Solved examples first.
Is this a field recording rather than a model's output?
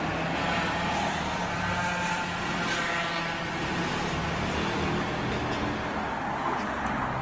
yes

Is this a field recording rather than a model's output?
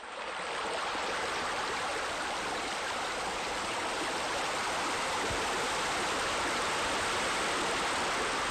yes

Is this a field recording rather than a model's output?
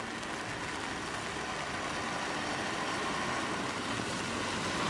yes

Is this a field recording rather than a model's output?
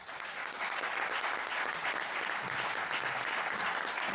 yes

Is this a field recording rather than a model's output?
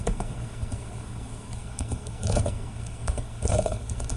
no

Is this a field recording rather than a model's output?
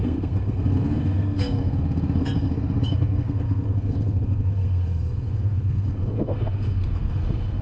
no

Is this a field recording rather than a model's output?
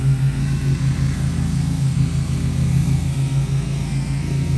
no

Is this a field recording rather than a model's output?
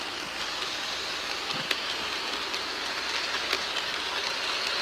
yes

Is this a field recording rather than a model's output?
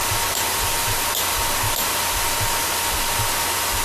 yes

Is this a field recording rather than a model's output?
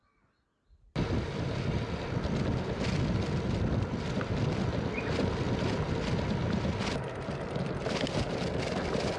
yes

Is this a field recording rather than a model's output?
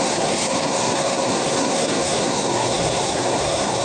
no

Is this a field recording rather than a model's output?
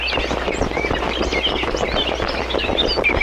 yes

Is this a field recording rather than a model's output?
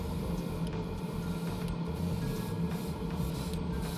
yes